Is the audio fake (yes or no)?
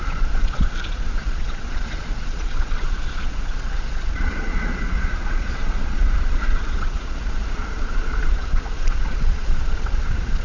yes